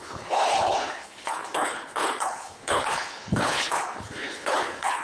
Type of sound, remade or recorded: remade